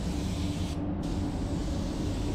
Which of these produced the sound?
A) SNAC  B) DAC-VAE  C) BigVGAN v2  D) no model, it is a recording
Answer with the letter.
D